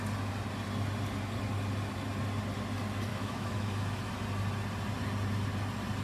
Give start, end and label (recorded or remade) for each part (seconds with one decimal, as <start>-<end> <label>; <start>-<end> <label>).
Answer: 0.0-3.1 recorded; 3.1-4.1 remade; 4.1-6.0 recorded